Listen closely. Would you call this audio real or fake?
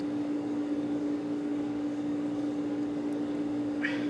fake